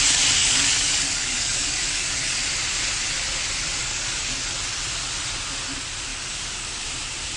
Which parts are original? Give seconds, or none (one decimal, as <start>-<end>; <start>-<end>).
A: 0.0-0.4; 2.4-3.8; 4.3-6.1; 6.8-7.4